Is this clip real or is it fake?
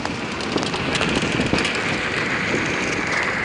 real